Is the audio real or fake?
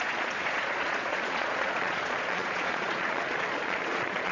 fake